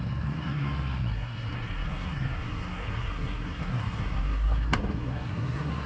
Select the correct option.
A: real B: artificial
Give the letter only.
B